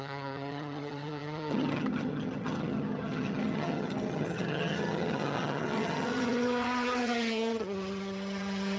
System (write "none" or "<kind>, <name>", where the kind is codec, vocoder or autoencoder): vocoder, HiFi-GAN